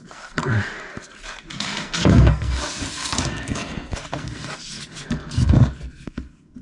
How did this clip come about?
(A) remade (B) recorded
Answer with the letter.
A